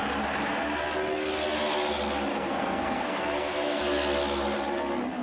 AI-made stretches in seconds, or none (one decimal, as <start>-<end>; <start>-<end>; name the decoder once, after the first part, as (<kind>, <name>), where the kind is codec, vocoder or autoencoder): 2.3-3.8 (codec, SNAC)